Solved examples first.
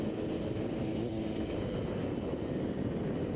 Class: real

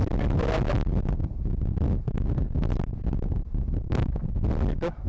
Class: real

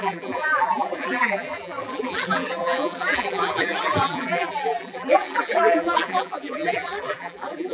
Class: fake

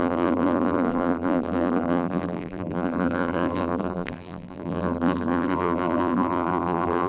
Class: fake